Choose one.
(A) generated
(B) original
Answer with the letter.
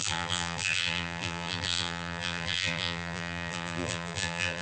A